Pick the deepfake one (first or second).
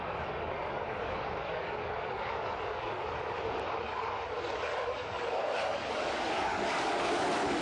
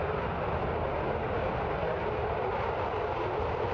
first